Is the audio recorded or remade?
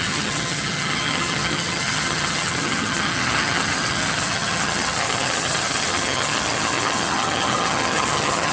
remade